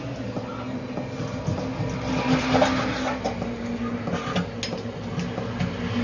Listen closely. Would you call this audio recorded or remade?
recorded